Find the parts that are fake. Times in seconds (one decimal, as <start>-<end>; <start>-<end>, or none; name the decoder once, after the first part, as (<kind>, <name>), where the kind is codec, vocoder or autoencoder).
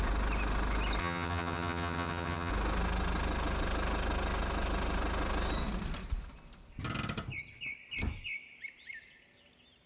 1.0-2.5 (vocoder, HiFi-GAN)